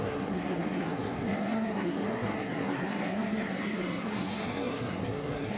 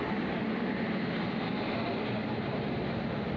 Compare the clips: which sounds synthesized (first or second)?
first